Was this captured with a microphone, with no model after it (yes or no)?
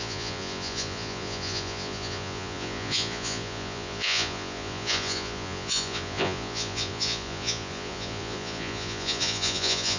no